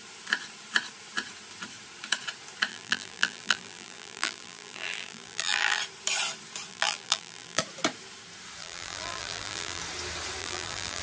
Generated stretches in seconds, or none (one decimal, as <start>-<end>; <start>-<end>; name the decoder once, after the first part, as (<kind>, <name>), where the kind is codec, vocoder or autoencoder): 2.7-5.8 (vocoder, BigVGAN v2); 6.7-7.6; 8.6-9.8; 10.4-11.0